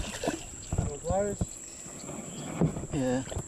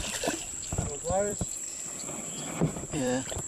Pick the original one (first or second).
first